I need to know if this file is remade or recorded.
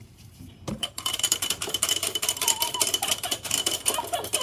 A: remade